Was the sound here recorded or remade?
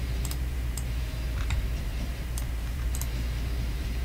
remade